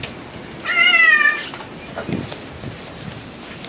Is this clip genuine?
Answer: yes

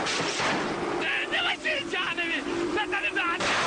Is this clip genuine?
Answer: yes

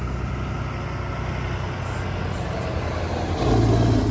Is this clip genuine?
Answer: yes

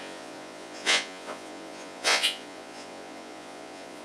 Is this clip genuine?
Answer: no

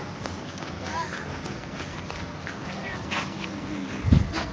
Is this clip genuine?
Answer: no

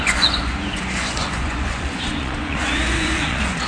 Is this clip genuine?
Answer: no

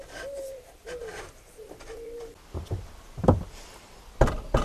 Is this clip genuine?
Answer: yes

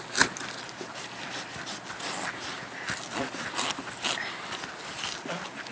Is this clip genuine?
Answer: yes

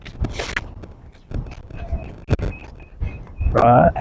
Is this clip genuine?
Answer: yes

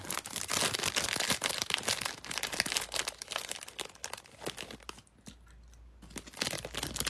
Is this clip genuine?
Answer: yes